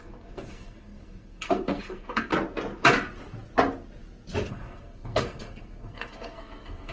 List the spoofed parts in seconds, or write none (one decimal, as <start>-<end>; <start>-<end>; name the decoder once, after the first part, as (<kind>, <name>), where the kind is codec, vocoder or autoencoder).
0.0-2.3 (codec, SNAC); 4.5-6.9